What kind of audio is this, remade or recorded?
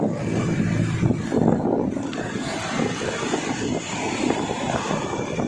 recorded